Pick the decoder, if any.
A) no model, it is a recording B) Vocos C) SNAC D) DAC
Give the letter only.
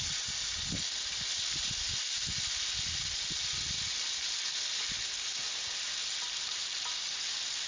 A